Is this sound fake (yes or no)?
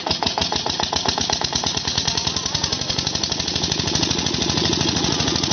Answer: yes